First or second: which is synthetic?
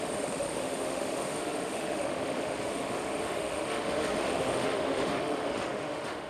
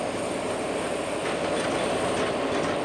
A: first